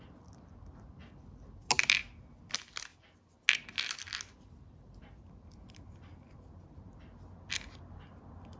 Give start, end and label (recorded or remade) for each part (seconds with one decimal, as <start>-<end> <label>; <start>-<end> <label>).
0.0-8.6 recorded